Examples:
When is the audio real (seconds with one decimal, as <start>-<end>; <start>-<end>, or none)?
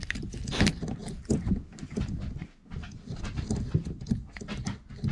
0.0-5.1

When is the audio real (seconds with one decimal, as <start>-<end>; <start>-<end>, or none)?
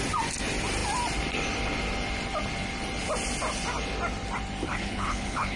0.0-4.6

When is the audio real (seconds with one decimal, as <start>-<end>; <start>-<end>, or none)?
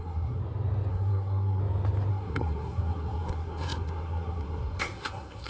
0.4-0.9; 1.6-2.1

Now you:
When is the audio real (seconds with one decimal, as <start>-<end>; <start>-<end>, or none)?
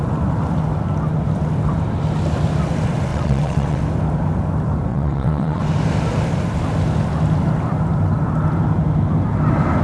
0.0-3.1; 3.8-4.9; 5.6-9.8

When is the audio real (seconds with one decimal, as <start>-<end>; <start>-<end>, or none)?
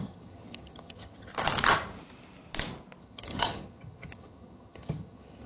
1.3-3.0